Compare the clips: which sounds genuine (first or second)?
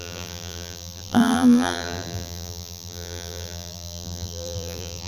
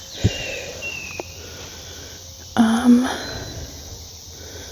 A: second